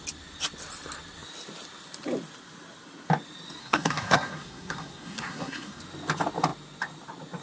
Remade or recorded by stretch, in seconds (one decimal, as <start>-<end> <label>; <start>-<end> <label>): 0.0-3.6 recorded; 3.6-5.8 remade; 5.8-7.4 recorded